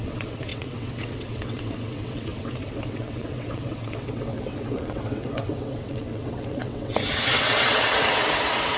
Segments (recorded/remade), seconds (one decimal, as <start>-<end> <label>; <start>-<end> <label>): 0.0-8.8 remade